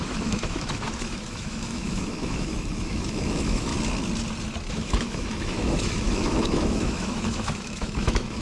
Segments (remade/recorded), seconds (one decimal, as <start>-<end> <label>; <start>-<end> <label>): 0.0-3.7 remade; 3.7-4.7 recorded; 4.7-8.4 remade